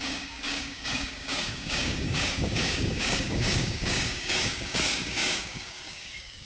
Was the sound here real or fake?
fake